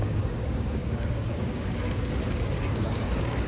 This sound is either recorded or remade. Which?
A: remade